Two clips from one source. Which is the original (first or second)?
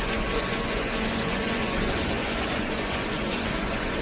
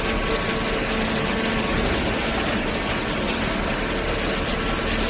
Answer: second